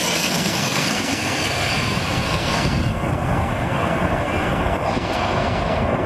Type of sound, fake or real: fake